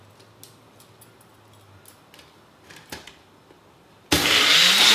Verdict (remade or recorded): recorded